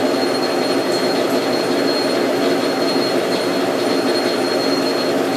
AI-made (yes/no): no